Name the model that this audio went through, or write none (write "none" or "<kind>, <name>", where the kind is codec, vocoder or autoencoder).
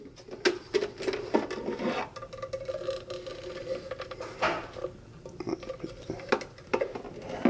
none